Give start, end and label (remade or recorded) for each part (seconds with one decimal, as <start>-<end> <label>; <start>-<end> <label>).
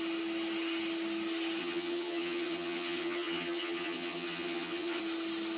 0.0-1.6 recorded; 1.6-5.0 remade; 5.0-5.6 recorded